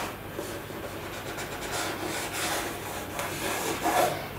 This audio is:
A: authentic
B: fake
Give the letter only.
A